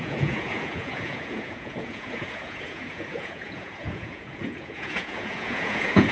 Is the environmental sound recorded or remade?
remade